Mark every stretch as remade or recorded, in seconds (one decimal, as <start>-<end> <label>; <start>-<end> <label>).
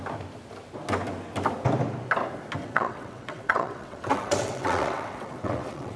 0.0-2.6 recorded; 2.6-6.0 remade